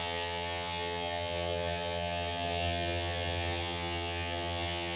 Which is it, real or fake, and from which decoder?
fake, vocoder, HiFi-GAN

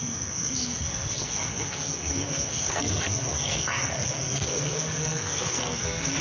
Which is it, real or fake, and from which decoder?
fake, codec, SNAC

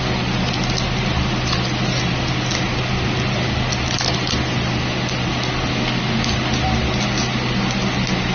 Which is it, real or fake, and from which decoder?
real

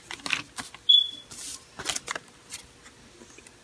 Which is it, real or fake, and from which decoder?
real